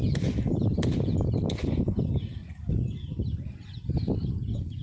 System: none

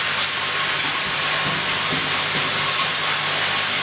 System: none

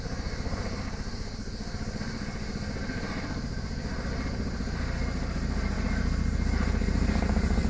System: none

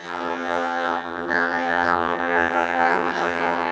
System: vocoder, HiFi-GAN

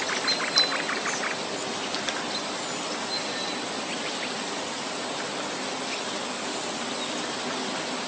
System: none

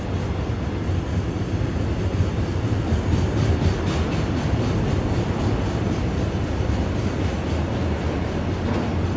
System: none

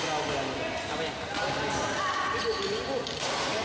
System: none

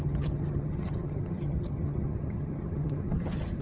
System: vocoder, HiFi-GAN